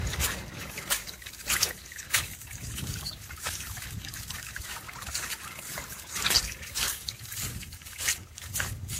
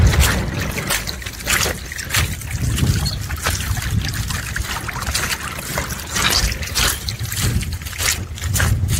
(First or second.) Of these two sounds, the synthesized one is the first